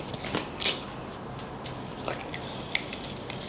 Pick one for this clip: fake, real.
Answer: real